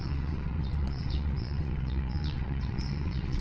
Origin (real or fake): fake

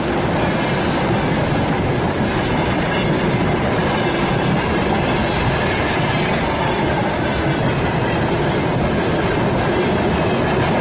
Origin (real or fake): real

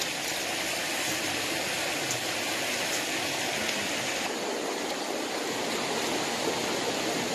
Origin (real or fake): real